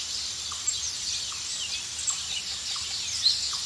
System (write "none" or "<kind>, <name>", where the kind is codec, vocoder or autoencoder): none